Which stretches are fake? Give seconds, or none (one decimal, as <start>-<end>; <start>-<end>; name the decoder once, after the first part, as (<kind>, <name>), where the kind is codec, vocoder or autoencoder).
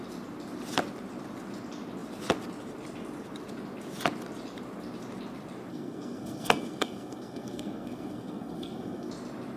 5.7-9.1 (codec, SNAC)